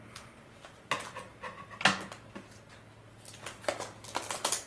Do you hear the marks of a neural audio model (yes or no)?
no